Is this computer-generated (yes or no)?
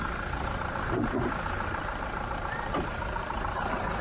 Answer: yes